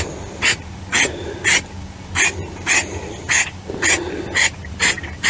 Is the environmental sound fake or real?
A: real